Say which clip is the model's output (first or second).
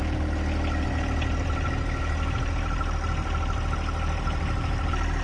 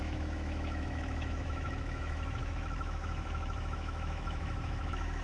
second